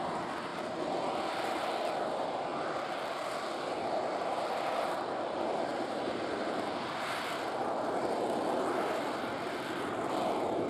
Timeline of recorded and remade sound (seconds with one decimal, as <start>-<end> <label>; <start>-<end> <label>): 0.0-0.5 remade; 0.5-1.8 recorded; 1.8-2.5 remade; 2.5-3.8 recorded; 3.8-10.7 remade

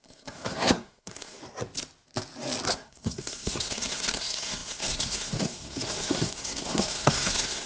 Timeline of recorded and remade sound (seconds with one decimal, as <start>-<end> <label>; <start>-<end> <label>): 0.0-1.4 remade; 1.4-2.7 recorded; 2.7-7.7 remade

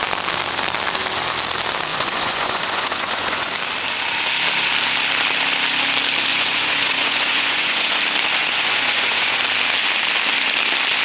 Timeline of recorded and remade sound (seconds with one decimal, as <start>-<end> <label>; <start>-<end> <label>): 0.0-1.9 recorded; 1.9-3.5 remade; 3.5-6.3 recorded; 6.3-8.0 remade; 8.0-8.4 recorded; 8.4-9.4 remade; 9.4-11.0 recorded

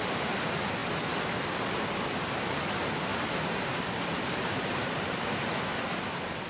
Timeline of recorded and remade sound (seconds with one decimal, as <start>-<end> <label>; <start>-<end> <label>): 0.0-3.1 recorded; 3.1-5.4 remade; 5.4-6.5 recorded

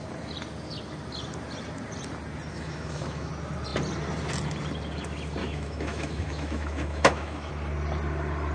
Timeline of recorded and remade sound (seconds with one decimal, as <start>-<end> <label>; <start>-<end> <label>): 0.0-2.5 recorded; 2.5-3.3 remade; 3.3-5.4 recorded; 5.4-7.5 remade; 7.5-8.5 recorded

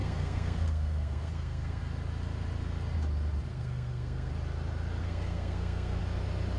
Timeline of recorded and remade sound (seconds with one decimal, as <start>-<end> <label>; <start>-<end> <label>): 0.0-1.8 remade; 1.8-3.5 recorded; 3.5-4.3 remade; 4.3-5.0 recorded; 5.0-6.0 remade; 6.0-6.6 recorded